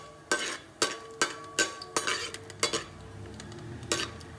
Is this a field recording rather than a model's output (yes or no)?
yes